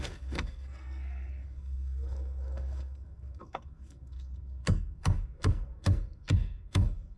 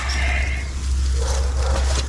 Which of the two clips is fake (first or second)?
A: first